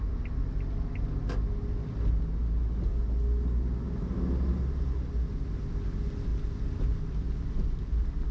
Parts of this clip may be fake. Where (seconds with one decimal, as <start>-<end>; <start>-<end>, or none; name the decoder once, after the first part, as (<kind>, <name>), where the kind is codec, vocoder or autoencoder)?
none